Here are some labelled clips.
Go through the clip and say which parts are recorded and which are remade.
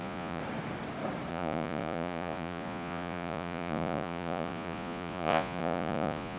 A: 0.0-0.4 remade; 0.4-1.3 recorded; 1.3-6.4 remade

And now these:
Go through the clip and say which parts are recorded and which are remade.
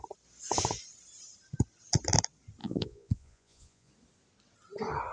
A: 0.0-2.6 recorded; 2.6-3.9 remade; 3.9-5.1 recorded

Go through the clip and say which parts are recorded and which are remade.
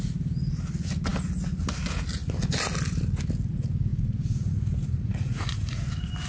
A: 0.0-3.9 recorded; 3.9-5.8 remade; 5.8-6.3 recorded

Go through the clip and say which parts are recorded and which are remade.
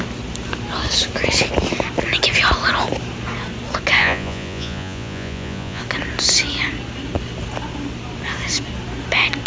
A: 0.0-4.0 recorded; 4.0-5.8 remade; 5.8-9.5 recorded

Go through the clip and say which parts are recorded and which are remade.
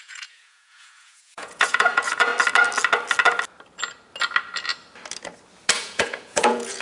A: 0.0-2.3 remade; 2.3-5.8 recorded; 5.8-6.8 remade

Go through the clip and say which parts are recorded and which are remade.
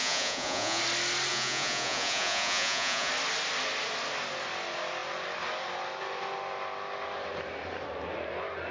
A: 0.0-0.8 remade; 0.8-1.3 recorded; 1.3-3.1 remade; 3.1-8.7 recorded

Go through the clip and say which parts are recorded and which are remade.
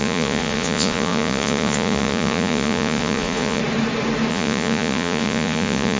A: 0.0-3.6 remade; 3.6-4.3 recorded; 4.3-6.0 remade